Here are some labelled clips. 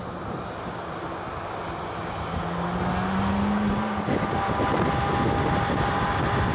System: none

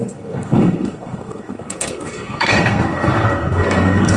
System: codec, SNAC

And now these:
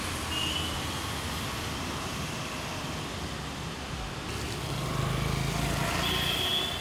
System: none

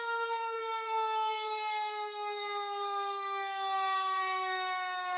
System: codec, SNAC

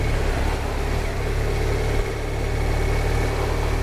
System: none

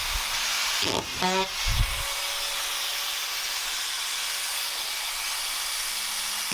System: none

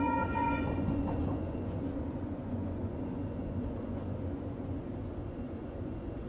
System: vocoder, Vocos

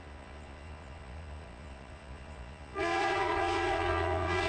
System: vocoder, Vocos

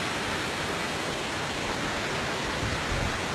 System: none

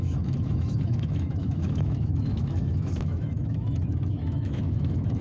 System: autoencoder, DAC-VAE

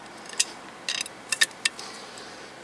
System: none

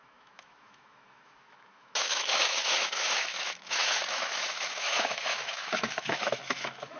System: autoencoder, DAC-VAE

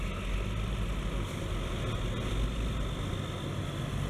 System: none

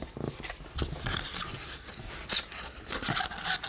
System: none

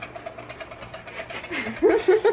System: none